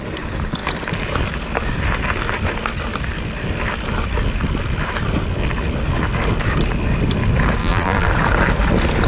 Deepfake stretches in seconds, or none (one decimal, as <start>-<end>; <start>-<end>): 7.6-8.1